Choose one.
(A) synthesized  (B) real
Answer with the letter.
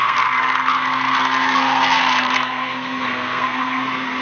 A